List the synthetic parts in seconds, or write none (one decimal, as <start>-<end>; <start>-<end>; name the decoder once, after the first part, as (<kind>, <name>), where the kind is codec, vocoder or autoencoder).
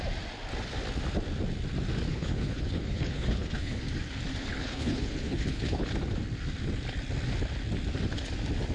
2.1-3.8 (codec, HILCodec); 4.5-5.8